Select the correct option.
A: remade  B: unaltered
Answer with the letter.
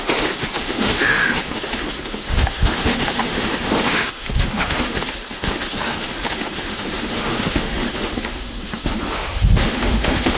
A